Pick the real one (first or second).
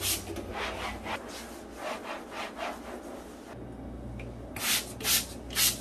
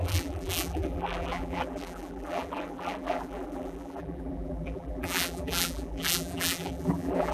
first